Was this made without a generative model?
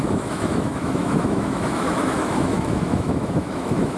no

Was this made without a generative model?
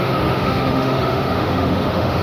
no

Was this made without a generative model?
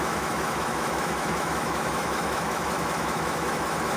no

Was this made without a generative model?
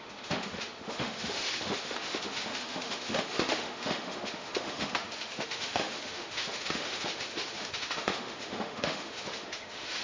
no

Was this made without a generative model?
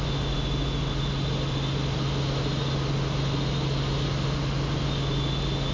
yes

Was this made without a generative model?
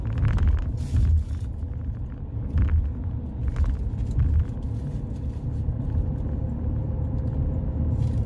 yes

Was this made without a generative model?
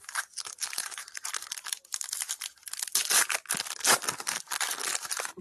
yes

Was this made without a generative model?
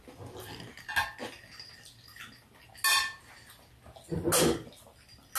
yes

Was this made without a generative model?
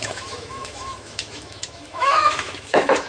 no